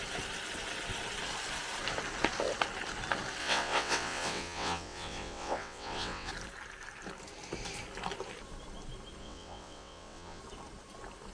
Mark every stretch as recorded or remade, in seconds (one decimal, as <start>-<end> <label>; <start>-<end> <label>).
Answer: 0.0-3.4 recorded; 3.4-6.3 remade; 6.3-9.2 recorded; 9.2-10.4 remade; 10.4-11.3 recorded